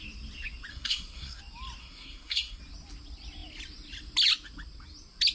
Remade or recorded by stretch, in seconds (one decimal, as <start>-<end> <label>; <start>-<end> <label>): 0.0-0.7 recorded; 0.7-1.4 remade; 1.4-1.8 recorded; 1.8-2.6 remade; 2.6-5.3 recorded